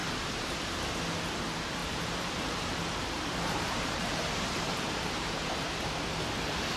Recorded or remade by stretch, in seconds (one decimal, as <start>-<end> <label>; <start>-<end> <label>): 0.0-0.6 remade; 0.6-1.8 recorded; 1.8-5.5 remade; 5.5-6.8 recorded

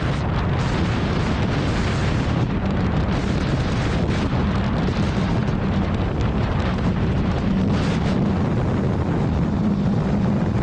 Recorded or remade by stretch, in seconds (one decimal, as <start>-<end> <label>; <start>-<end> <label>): 0.0-2.0 recorded; 2.0-3.1 remade; 3.1-5.4 recorded; 5.4-7.4 remade; 7.4-10.6 recorded

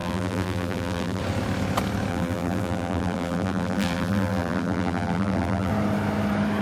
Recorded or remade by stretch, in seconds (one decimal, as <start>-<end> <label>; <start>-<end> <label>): 0.0-1.2 remade; 1.2-2.1 recorded; 2.1-5.7 remade; 5.7-6.6 recorded

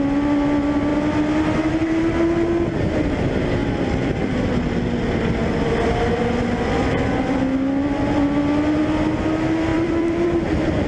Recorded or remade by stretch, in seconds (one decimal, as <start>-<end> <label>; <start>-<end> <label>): 0.0-3.6 recorded; 3.6-4.6 remade; 4.6-9.7 recorded; 9.7-10.4 remade; 10.4-10.9 recorded

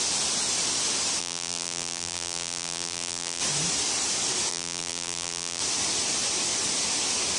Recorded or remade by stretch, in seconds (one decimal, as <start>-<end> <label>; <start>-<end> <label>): 0.0-1.2 recorded; 1.2-3.4 remade; 3.4-4.5 recorded; 4.5-5.6 remade; 5.6-7.4 recorded